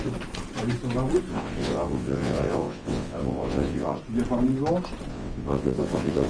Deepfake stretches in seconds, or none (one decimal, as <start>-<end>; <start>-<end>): 1.3-4.0; 5.1-6.3